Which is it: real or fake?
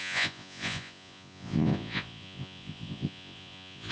fake